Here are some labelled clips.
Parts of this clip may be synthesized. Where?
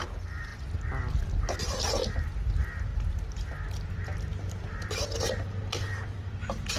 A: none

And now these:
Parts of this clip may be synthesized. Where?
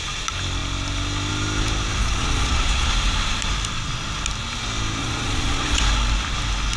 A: 2.0-2.9 (vocoder, Vocos); 5.0-5.8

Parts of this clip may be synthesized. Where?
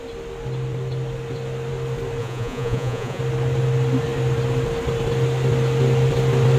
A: 2.2-3.2 (vocoder, Vocos)